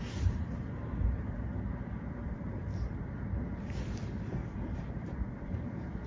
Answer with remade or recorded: remade